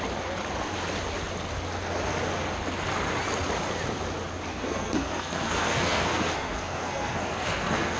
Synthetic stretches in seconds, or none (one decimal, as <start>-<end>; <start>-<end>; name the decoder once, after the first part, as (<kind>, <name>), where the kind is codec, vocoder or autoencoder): 4.5-8.0 (codec, SNAC)